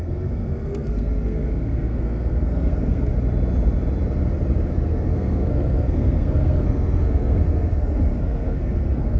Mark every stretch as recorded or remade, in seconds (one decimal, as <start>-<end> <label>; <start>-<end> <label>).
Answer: 0.0-3.1 remade; 3.1-4.7 recorded; 4.7-9.2 remade